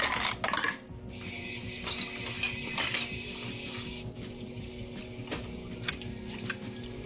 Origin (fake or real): real